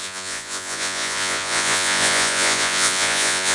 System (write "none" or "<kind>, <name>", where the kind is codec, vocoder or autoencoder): vocoder, Vocos